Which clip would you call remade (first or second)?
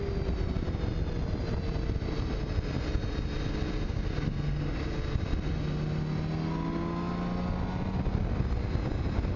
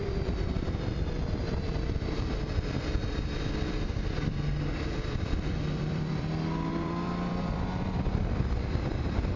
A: second